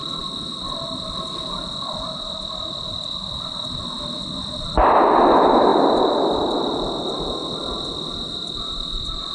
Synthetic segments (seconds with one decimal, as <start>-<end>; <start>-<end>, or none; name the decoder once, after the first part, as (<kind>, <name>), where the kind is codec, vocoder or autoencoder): 0.0-5.2 (vocoder, BigVGAN v2); 5.7-6.3